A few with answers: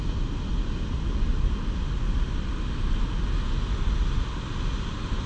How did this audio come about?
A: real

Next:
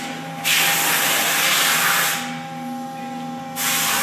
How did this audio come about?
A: real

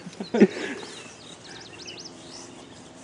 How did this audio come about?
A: real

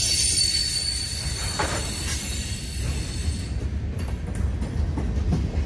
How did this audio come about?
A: real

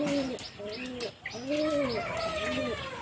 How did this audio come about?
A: real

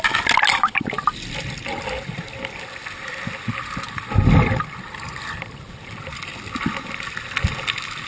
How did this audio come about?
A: real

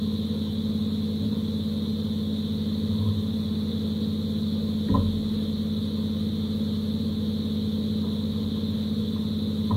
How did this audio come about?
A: real